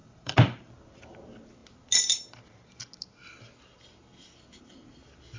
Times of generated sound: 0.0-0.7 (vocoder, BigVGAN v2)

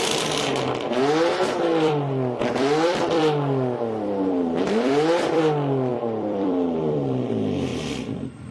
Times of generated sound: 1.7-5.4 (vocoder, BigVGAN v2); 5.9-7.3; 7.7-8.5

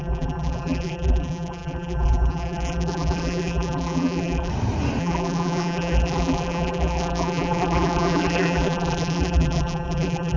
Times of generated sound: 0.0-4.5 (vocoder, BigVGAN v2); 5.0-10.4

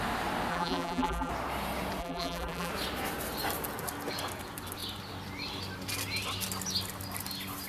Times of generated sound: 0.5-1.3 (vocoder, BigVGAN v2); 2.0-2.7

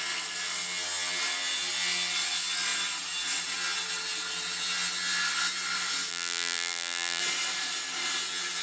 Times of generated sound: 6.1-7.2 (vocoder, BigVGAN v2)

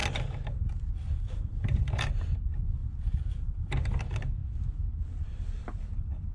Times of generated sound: 0.9-4.4 (vocoder, BigVGAN v2); 5.2-6.3

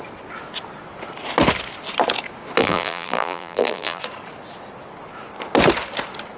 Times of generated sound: 2.6-4.0 (vocoder, BigVGAN v2)

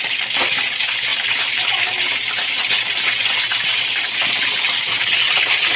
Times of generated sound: 1.1-1.8 (vocoder, BigVGAN v2)